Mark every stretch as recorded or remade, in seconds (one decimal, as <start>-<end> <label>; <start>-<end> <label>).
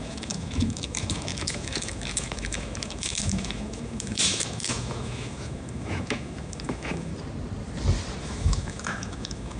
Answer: 0.0-7.1 remade; 7.1-8.2 recorded; 8.2-9.6 remade